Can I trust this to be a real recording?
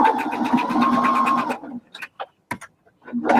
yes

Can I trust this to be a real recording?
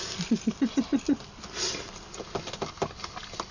yes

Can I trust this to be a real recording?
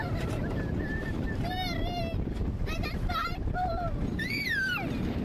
no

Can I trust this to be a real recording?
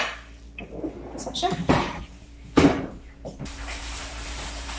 no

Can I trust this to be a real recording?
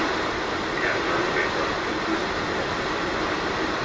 no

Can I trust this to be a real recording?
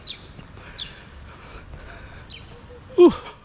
yes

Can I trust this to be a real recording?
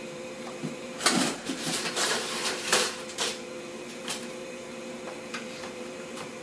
no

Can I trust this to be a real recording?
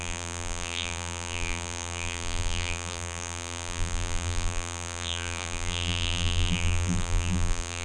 no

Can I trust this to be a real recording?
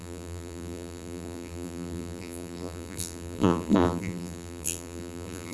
no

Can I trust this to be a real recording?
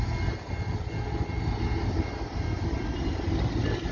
yes